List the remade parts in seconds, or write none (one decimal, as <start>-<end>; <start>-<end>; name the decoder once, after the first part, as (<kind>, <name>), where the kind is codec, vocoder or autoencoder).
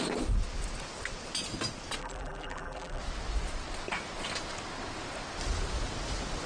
2.0-3.0 (vocoder, BigVGAN v2)